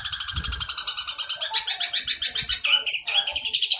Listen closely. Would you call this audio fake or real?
real